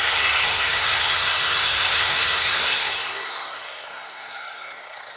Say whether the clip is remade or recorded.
remade